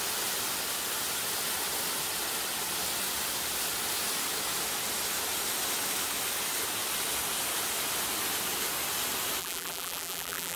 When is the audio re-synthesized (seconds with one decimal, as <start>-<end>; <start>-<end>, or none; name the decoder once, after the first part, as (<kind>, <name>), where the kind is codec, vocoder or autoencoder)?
9.4-10.6 (vocoder, BigVGAN v2)